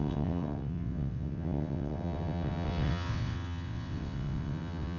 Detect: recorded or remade remade